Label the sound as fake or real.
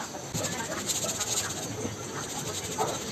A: real